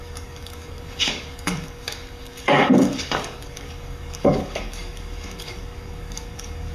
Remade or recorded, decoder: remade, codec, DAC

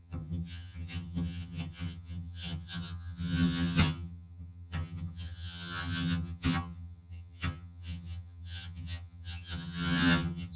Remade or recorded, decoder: remade, vocoder, HiFi-GAN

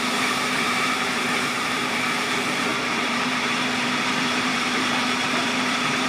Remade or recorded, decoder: remade, vocoder, BigVGAN v2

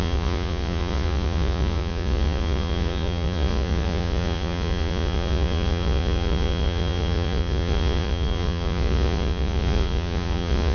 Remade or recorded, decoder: remade, vocoder, Vocos